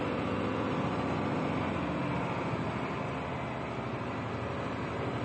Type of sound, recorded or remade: recorded